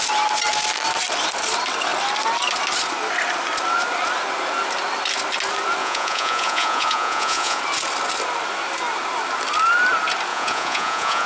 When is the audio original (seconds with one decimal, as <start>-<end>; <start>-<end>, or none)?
0.0-5.8; 7.6-10.3